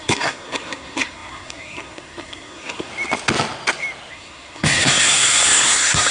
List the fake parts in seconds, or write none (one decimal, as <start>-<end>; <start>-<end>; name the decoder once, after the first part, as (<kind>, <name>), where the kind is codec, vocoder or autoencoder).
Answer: 0.0-2.9 (codec, SNAC); 4.1-6.1